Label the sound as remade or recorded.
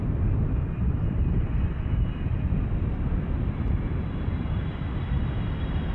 remade